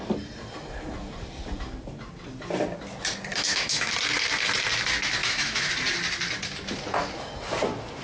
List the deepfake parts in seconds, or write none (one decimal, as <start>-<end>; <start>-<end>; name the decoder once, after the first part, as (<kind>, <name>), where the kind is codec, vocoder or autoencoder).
3.3-3.9 (autoencoder, DAC-VAE); 5.2-5.7